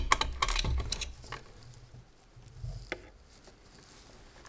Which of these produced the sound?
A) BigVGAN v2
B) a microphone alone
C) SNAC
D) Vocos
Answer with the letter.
B